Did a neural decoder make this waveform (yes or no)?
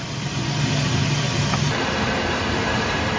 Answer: no